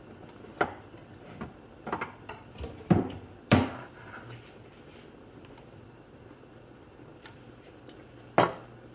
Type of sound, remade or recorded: remade